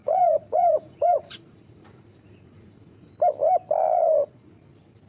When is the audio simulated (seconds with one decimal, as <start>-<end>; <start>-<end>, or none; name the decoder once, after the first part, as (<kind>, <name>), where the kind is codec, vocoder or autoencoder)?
0.0-3.1 (vocoder, Vocos); 3.8-4.5